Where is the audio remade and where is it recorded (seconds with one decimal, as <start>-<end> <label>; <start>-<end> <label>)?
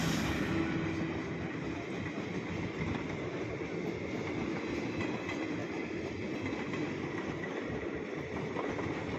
0.0-9.2 recorded